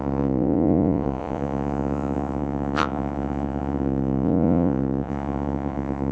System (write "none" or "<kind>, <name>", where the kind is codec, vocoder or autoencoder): vocoder, Vocos